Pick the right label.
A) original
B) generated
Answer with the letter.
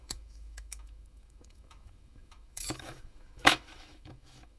B